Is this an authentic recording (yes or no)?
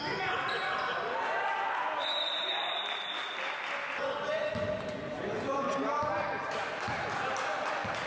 yes